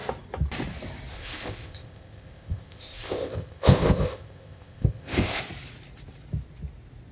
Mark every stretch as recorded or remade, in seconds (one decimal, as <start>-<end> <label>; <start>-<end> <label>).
0.0-1.1 recorded; 1.1-5.4 remade; 5.4-7.1 recorded